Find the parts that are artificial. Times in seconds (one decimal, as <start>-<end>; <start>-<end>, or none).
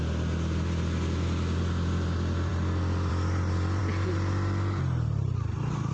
none